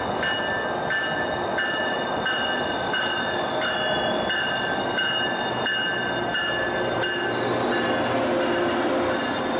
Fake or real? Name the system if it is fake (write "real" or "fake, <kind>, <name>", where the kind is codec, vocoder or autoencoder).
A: real